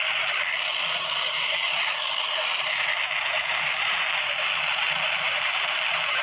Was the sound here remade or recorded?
recorded